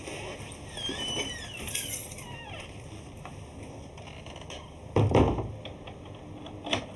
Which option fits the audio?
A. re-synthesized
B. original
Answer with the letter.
B